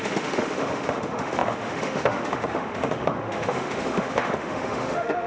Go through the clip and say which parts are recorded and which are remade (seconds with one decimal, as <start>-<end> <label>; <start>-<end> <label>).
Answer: 0.0-5.3 remade